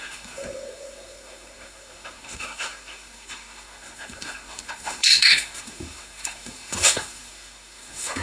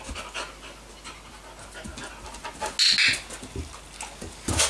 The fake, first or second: first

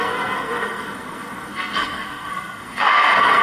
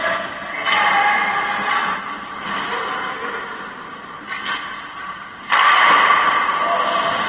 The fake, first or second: first